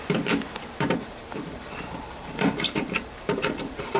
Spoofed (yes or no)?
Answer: yes